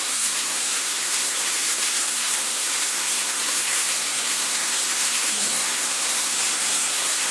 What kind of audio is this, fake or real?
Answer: fake